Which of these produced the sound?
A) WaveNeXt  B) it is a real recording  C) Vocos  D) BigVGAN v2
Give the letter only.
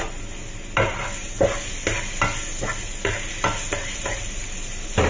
B